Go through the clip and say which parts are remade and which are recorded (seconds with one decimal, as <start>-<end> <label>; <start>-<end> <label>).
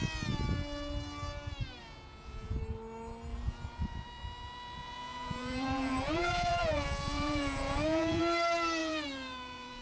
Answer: 0.0-1.8 recorded; 1.8-2.6 remade; 2.6-3.3 recorded; 3.3-8.2 remade; 8.2-8.8 recorded; 8.8-9.8 remade